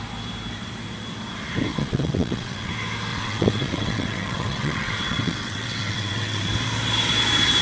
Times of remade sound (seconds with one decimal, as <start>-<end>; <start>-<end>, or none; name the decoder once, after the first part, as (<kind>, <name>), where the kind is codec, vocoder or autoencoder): 1.7-2.7 (vocoder, WaveNeXt); 3.1-6.5